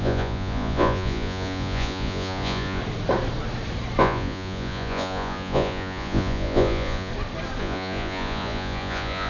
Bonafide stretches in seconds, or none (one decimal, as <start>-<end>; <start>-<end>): 2.8-4.0; 7.1-7.6